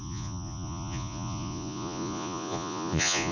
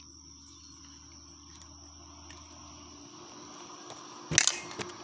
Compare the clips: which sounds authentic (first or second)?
second